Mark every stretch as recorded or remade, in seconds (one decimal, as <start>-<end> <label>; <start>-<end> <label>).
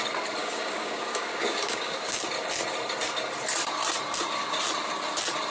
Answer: 0.0-0.4 recorded; 0.4-2.2 remade; 2.2-5.5 recorded